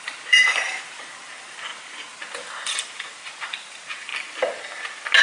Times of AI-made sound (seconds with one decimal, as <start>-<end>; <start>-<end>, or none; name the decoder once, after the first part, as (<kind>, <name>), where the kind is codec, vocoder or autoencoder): 0.0-4.1 (vocoder, BigVGAN v2)